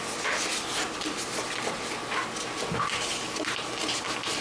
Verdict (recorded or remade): recorded